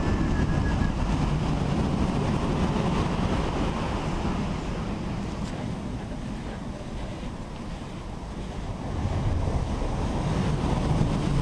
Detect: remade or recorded recorded